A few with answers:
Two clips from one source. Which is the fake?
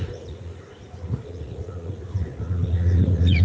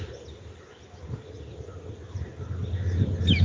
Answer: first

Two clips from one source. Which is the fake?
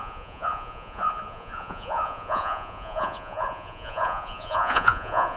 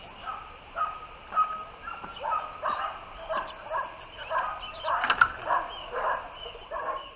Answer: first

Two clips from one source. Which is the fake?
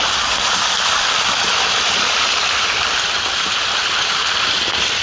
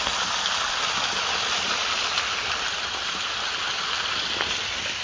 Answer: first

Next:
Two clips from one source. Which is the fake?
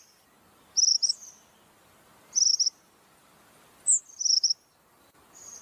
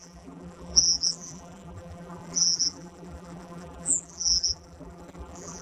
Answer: second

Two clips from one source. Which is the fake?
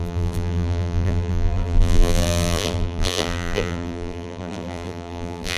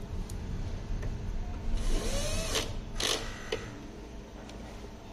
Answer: first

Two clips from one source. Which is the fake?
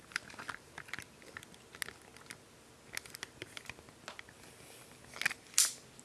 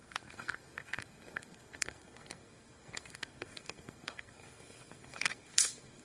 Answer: second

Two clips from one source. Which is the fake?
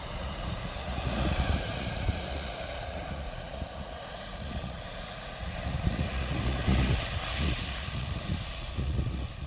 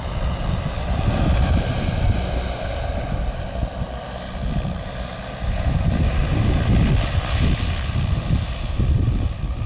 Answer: first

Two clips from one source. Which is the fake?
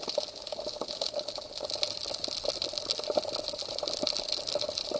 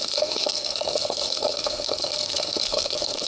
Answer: second